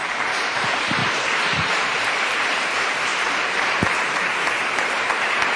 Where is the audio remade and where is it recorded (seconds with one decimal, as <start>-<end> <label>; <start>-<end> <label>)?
0.0-5.6 remade